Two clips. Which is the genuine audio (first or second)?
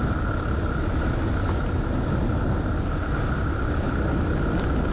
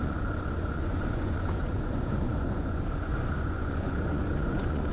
first